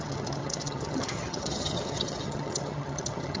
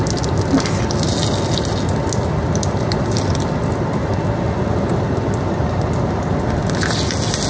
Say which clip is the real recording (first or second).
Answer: second